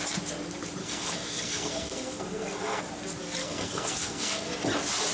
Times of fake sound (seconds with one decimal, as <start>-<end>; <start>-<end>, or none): 0.8-2.8; 3.4-4.5